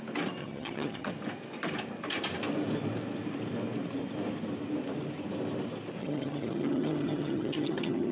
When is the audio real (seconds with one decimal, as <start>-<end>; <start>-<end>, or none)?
0.0-0.4; 1.1-6.0